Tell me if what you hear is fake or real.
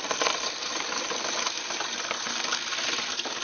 real